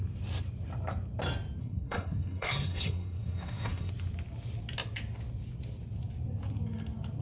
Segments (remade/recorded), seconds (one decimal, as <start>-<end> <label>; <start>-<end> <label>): 0.0-1.6 recorded; 1.6-3.9 remade; 3.9-7.2 recorded